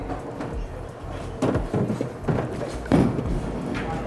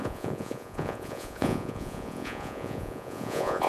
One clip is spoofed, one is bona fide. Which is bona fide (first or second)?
first